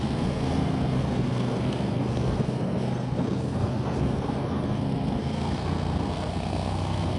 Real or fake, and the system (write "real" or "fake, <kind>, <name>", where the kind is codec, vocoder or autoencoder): fake, codec, SNAC